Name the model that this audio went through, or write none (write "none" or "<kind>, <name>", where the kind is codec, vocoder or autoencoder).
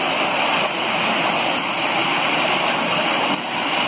none